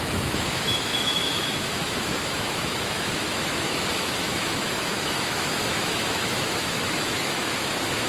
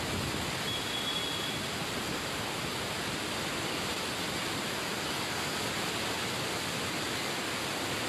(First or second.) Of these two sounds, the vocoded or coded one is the first